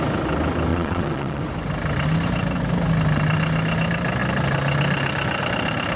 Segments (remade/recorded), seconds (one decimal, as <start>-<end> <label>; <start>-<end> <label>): 0.0-0.7 recorded; 0.7-1.4 remade; 1.4-6.0 recorded